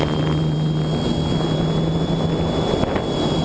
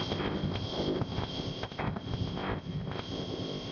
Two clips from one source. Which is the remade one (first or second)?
second